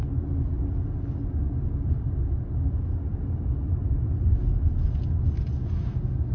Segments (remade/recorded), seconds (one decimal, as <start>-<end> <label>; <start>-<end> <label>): 0.0-6.3 recorded